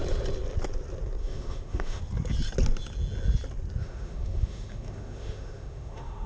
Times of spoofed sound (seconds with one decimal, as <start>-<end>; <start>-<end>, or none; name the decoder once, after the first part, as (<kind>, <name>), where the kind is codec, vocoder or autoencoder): 1.2-2.0 (autoencoder, DAC-VAE); 3.8-6.3